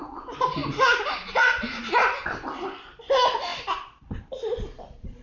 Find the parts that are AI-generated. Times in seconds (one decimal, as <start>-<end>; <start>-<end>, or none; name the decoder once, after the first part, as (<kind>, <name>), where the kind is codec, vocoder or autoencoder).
none